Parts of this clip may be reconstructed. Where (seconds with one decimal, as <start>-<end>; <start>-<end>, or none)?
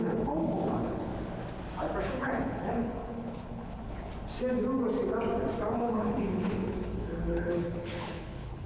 0.0-1.1; 2.0-4.1; 5.7-8.7